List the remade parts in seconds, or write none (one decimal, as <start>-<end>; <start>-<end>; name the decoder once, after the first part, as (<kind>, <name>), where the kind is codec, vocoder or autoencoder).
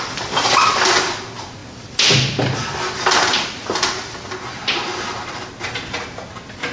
none